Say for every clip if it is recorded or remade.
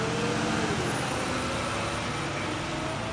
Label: recorded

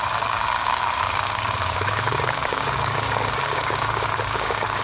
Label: remade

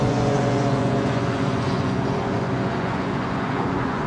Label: remade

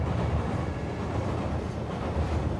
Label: recorded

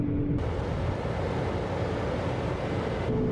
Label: recorded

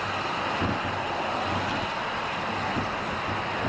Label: recorded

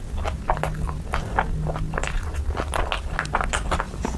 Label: recorded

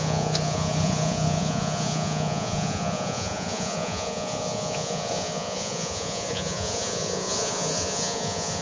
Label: remade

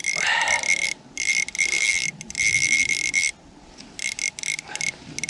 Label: recorded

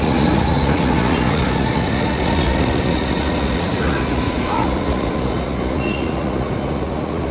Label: remade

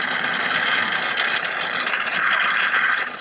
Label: remade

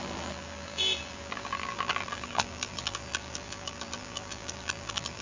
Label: remade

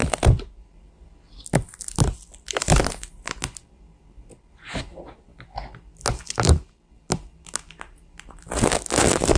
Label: recorded